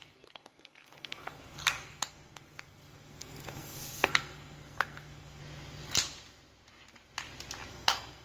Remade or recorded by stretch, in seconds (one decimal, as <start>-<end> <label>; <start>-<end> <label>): 0.0-5.4 remade; 5.4-7.7 recorded; 7.7-8.2 remade